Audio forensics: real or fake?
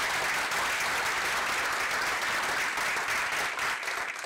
real